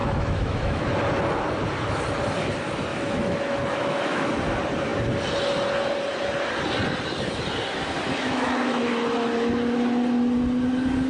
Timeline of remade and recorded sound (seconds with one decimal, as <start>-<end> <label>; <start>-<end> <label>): 0.0-0.9 remade; 0.9-2.9 recorded; 2.9-4.3 remade; 4.3-8.2 recorded; 8.2-8.9 remade; 8.9-11.1 recorded